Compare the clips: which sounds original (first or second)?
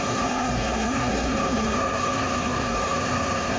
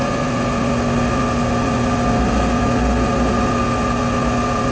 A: second